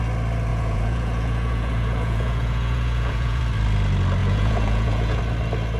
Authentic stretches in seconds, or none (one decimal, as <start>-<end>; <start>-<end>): 0.0-0.5; 3.4-4.2; 5.2-5.8